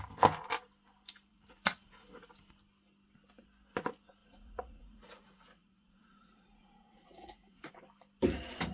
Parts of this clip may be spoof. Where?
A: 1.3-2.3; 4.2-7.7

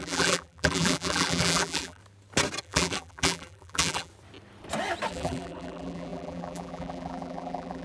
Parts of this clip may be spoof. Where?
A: 0.0-2.0; 2.6-4.1; 5.1-7.8

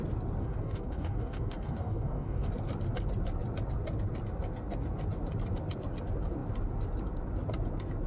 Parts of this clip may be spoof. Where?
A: 0.4-2.5

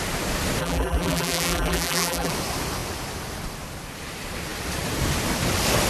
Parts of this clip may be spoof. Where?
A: 0.6-2.3

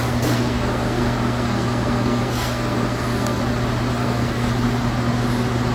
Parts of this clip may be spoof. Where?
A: 0.0-3.4; 4.0-4.5

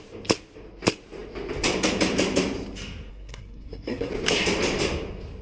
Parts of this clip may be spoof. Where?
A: 3.1-4.1